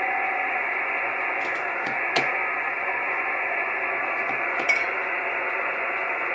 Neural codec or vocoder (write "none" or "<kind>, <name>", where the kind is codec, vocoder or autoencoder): vocoder, Vocos